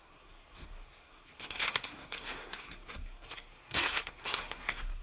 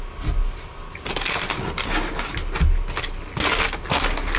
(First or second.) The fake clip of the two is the first